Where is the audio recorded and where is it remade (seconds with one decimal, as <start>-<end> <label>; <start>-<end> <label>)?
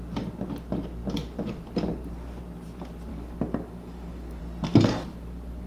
0.0-3.1 recorded; 3.1-4.4 remade; 4.4-5.1 recorded; 5.1-5.7 remade